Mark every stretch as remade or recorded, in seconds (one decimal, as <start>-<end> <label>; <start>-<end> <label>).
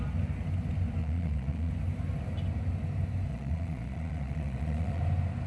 0.0-1.0 recorded; 1.0-1.7 remade; 1.7-3.3 recorded; 3.3-5.0 remade; 5.0-5.5 recorded